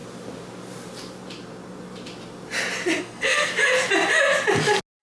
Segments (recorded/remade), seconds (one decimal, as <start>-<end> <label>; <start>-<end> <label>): 0.0-3.0 recorded; 3.0-3.5 remade; 3.5-5.0 recorded